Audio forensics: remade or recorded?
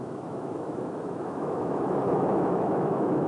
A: remade